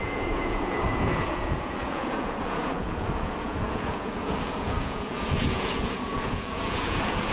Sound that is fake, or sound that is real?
fake